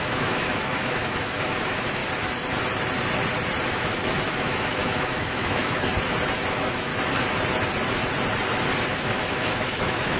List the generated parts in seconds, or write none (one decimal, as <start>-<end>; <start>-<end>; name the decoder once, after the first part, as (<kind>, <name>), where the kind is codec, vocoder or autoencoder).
0.0-2.0 (autoencoder, DAC-VAE); 3.7-5.9; 6.5-6.9; 8.9-10.2